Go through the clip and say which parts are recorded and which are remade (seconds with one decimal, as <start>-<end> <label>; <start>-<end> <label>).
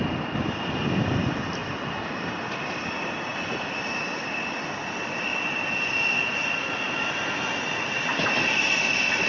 0.0-9.3 recorded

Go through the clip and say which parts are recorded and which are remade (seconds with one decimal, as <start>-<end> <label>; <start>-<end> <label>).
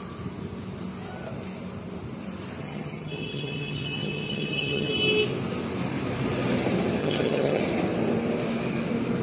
0.0-2.6 recorded; 2.6-4.9 remade; 4.9-7.0 recorded; 7.0-7.6 remade; 7.6-9.2 recorded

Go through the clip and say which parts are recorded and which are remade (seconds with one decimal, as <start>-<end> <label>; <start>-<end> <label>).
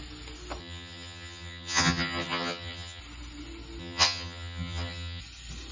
0.0-0.6 recorded; 0.6-3.0 remade; 3.0-3.8 recorded; 3.8-5.2 remade; 5.2-5.7 recorded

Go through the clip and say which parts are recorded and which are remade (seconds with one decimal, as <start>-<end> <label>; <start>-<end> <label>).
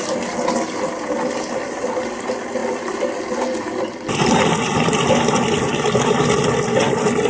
0.0-7.3 recorded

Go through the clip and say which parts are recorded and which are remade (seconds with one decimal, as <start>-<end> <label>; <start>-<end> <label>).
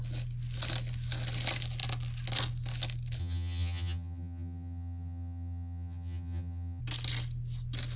0.0-3.2 recorded; 3.2-6.8 remade; 6.8-8.0 recorded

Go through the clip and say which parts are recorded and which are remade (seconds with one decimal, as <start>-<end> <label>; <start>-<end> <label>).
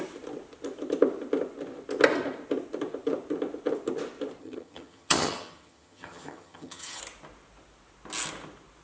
0.0-4.4 recorded; 4.4-7.0 remade; 7.0-8.8 recorded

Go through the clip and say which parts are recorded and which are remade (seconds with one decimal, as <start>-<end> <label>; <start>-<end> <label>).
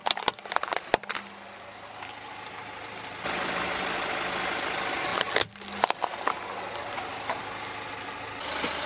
0.0-8.9 recorded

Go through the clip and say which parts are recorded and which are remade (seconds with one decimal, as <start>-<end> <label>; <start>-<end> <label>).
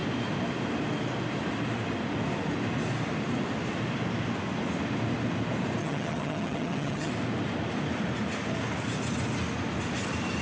0.0-5.8 recorded; 5.8-7.1 remade; 7.1-10.4 recorded